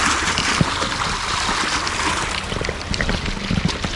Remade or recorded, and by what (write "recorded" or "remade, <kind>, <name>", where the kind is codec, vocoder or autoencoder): recorded